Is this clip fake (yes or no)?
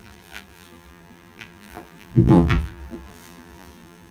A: yes